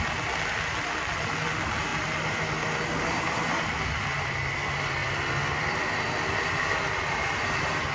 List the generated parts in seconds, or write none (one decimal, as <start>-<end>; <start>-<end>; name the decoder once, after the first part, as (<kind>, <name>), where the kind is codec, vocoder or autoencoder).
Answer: 5.0-7.4 (vocoder, BigVGAN v2)